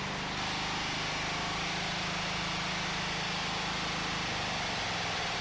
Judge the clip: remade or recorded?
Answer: recorded